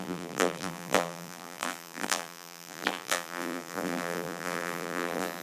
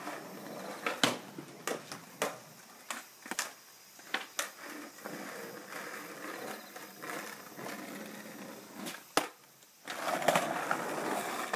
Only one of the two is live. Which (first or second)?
second